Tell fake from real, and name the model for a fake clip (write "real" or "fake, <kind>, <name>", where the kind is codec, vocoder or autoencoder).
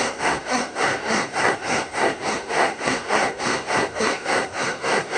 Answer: fake, codec, SNAC